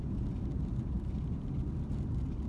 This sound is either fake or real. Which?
real